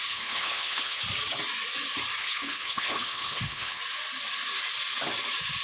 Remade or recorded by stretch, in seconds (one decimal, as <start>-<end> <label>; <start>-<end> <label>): 0.0-1.0 remade; 1.0-2.2 recorded; 2.2-3.8 remade; 3.8-5.6 recorded